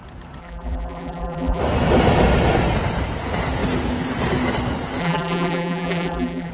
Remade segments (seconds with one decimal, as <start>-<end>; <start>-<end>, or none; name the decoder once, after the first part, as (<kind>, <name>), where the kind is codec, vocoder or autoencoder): 0.4-1.6 (vocoder, BigVGAN v2); 5.0-6.5